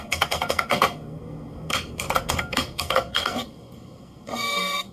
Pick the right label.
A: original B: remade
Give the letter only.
B